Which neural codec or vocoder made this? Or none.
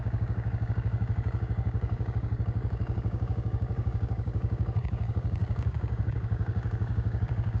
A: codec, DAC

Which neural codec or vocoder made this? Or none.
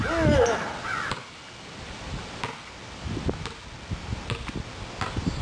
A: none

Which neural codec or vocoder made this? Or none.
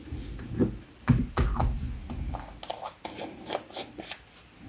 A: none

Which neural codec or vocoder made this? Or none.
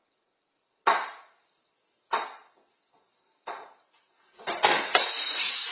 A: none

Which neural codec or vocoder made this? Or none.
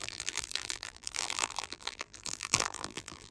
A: vocoder, BigVGAN v2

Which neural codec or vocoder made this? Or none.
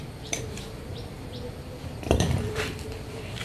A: vocoder, BigVGAN v2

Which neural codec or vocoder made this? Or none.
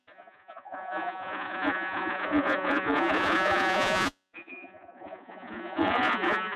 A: vocoder, Vocos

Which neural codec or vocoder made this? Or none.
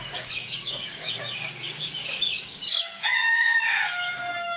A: codec, DAC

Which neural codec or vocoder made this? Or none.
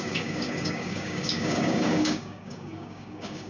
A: codec, DAC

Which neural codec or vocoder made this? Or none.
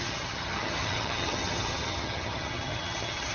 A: vocoder, HiFi-GAN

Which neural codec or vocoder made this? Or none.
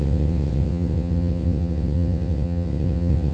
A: vocoder, WaveNeXt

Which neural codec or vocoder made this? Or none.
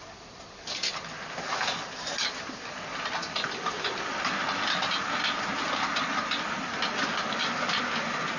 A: none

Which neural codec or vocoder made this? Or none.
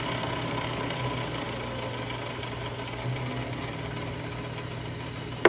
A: none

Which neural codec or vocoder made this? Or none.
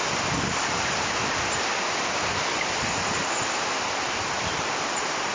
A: vocoder, BigVGAN v2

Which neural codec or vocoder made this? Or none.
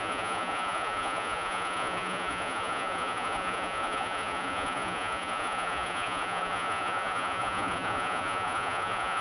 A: vocoder, Vocos